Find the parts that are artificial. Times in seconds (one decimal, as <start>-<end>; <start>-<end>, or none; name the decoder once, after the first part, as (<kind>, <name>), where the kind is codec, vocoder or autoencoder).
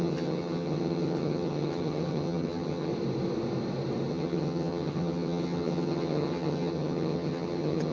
0.0-2.9 (vocoder, HiFi-GAN); 4.1-7.9